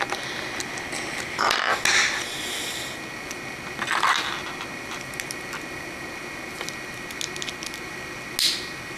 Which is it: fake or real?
real